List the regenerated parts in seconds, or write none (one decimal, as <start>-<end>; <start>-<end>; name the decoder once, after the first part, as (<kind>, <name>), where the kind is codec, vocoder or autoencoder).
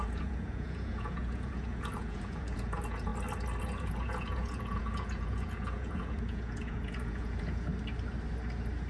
0.0-3.1 (vocoder, Vocos); 3.6-7.7